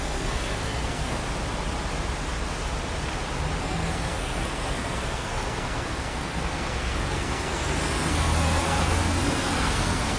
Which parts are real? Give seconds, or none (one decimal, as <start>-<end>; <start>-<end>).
1.2-3.6